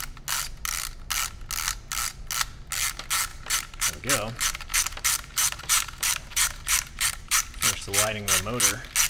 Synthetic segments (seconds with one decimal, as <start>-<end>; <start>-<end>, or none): 3.3-4.0; 4.7-8.4